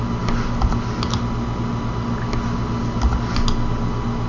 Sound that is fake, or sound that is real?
real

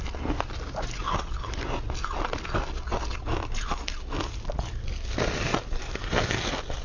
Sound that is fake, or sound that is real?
real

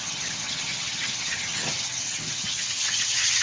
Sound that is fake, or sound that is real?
fake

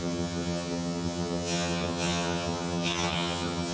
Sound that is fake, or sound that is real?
fake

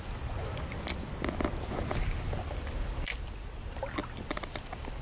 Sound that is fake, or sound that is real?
real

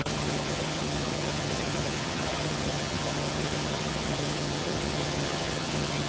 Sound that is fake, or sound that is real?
fake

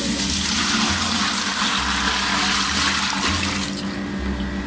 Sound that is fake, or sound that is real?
real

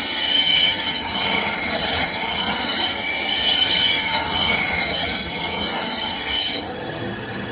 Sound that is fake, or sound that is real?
fake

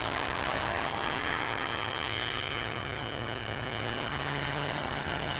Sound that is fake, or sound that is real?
fake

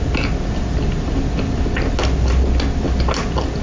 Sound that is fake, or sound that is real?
real